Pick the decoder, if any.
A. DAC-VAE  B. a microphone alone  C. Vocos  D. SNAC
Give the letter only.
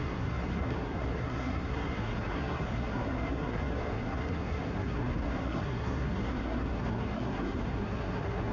D